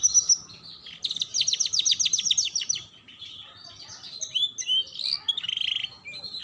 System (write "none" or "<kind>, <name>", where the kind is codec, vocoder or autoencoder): none